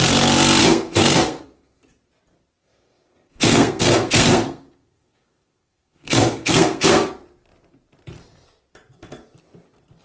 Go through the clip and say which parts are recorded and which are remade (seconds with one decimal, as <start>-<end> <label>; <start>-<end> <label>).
0.0-0.6 recorded; 0.6-1.8 remade; 1.8-2.6 recorded; 2.6-7.1 remade; 7.1-10.0 recorded